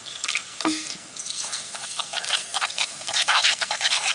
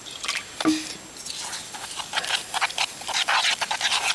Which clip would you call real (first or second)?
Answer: second